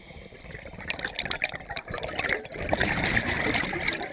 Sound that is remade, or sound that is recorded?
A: remade